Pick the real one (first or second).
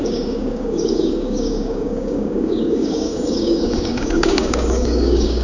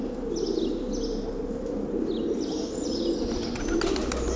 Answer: second